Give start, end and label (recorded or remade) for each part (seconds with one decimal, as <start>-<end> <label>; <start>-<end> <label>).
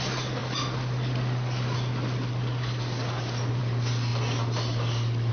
0.0-5.3 recorded